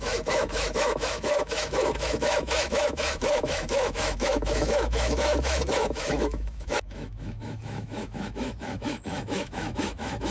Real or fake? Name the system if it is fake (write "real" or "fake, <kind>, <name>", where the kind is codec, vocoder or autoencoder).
fake, autoencoder, DAC-VAE